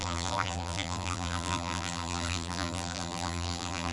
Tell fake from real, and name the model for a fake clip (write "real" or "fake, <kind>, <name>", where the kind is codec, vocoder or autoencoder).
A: fake, vocoder, BigVGAN v2